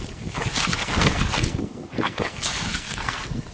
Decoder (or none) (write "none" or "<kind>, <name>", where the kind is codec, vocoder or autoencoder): codec, SNAC